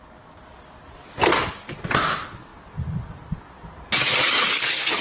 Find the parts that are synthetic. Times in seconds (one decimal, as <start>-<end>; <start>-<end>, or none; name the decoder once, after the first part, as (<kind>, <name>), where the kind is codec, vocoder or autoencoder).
none